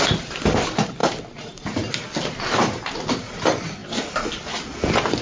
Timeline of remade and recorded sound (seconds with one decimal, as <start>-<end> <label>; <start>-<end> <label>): 0.0-5.2 recorded